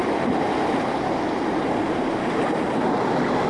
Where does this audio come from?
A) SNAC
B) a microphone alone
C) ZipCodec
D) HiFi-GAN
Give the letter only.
B